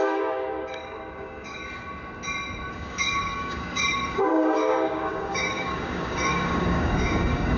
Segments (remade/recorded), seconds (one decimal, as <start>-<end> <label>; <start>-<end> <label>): 0.0-1.6 remade; 1.6-2.7 recorded; 2.7-7.6 remade